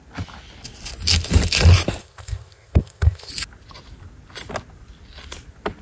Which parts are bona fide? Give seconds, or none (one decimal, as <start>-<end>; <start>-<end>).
0.0-2.0; 3.3-5.8

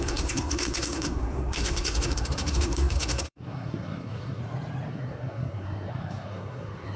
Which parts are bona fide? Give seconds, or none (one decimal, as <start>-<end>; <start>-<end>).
4.4-4.9

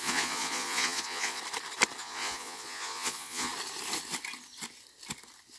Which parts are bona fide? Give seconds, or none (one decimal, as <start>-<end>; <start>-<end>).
1.4-2.0; 3.5-5.6

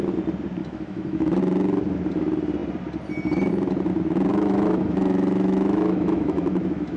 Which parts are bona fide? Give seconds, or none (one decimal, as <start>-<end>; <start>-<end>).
0.0-0.6; 1.4-4.3